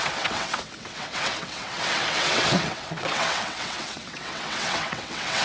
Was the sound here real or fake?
fake